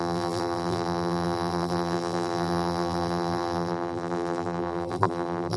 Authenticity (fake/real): fake